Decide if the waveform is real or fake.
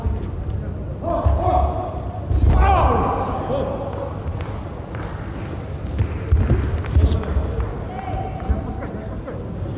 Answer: real